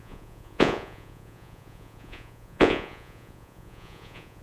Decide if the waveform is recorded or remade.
remade